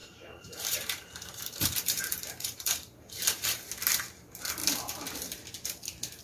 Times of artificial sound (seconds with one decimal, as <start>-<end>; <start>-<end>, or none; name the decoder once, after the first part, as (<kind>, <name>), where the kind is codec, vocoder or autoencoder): 0.0-3.7 (vocoder, BigVGAN v2)